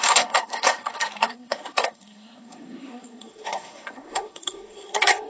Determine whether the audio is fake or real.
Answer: fake